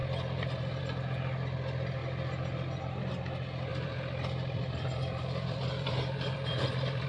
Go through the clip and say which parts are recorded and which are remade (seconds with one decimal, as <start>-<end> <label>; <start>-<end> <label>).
0.0-0.8 remade; 0.8-3.7 recorded; 3.7-7.1 remade

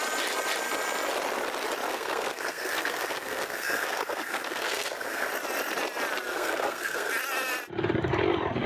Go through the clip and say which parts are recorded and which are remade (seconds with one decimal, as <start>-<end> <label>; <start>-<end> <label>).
0.0-1.9 recorded; 1.9-5.3 remade; 5.3-6.3 recorded; 6.3-7.1 remade; 7.1-8.7 recorded

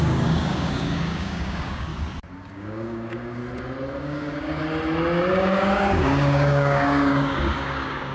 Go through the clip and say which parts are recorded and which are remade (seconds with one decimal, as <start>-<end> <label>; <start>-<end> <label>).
0.0-1.9 remade; 1.9-2.5 recorded; 2.5-3.4 remade; 3.4-4.0 recorded; 4.0-4.6 remade; 4.6-5.3 recorded; 5.3-8.1 remade

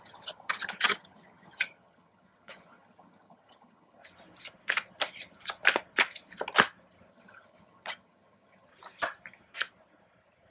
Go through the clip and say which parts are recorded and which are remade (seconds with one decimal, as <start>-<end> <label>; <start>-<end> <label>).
0.0-4.0 remade; 4.0-7.1 recorded; 7.1-8.7 remade; 8.7-10.5 recorded

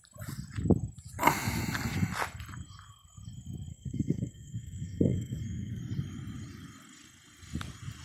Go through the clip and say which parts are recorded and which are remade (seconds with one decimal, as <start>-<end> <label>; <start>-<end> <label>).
0.0-3.7 recorded; 3.7-5.8 remade; 5.8-8.0 recorded

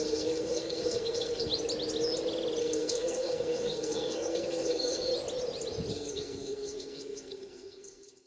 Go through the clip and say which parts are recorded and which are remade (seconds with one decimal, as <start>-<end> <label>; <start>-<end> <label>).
0.0-1.5 remade; 1.5-2.6 recorded; 2.6-5.1 remade; 5.1-5.9 recorded; 5.9-8.3 remade

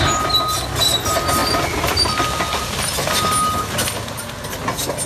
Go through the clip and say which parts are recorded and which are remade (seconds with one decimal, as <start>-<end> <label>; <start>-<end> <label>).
0.0-5.1 recorded